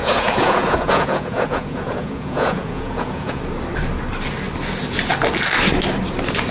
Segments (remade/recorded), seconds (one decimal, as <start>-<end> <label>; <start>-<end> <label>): 0.0-3.4 remade; 3.4-6.5 recorded